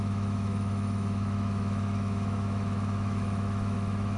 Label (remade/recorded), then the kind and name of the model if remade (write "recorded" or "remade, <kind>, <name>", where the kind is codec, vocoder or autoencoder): remade, autoencoder, DAC-VAE